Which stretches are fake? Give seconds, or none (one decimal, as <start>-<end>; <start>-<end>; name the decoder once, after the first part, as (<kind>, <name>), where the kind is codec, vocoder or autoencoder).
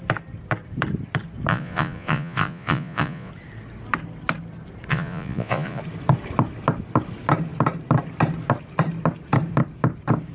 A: 1.5-3.3 (vocoder, Vocos); 4.9-5.8